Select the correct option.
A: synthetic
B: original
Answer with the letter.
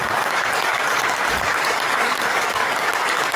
A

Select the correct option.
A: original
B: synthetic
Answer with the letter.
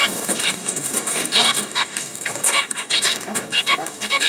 B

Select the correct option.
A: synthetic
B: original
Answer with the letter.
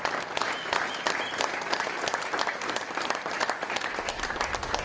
B